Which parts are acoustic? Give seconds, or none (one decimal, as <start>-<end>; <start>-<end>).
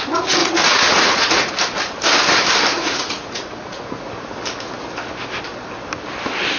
0.0-0.4; 1.5-2.7; 4.1-6.6